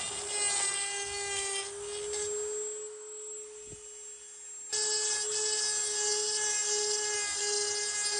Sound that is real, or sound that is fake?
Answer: real